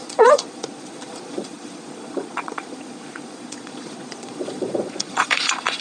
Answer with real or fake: fake